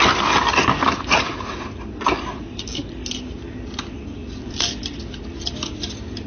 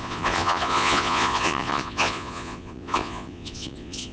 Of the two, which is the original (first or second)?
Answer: first